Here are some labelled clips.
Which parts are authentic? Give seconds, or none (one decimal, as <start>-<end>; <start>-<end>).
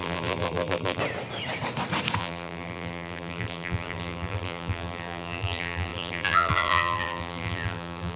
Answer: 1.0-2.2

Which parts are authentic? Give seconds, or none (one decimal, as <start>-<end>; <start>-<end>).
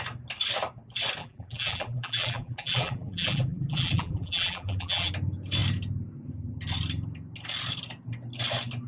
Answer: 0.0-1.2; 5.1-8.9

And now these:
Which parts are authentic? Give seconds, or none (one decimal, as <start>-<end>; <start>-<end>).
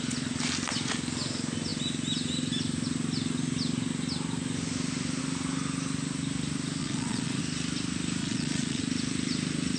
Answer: 0.0-6.8; 7.4-8.2; 8.8-9.8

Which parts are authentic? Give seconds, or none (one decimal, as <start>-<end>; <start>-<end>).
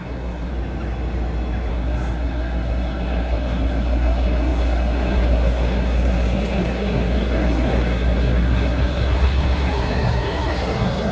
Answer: 0.5-1.7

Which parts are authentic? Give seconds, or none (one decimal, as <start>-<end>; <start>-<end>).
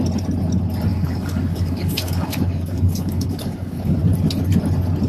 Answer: 0.0-0.9; 4.0-5.1